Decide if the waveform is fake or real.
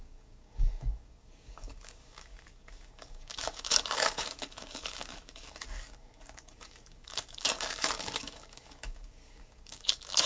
fake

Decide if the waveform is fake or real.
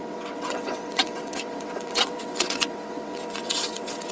fake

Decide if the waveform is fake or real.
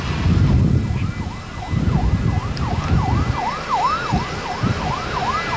real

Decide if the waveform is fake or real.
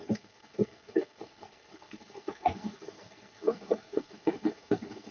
fake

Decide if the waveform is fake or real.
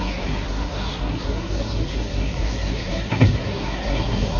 fake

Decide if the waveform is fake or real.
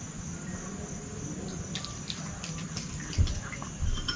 real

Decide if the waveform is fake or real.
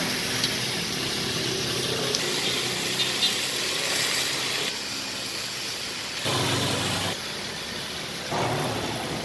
real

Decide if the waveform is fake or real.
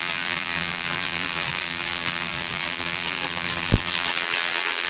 fake